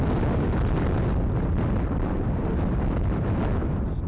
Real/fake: real